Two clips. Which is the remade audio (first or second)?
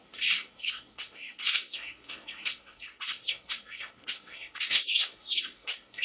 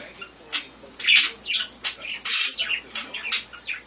first